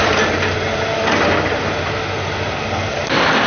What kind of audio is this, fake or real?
fake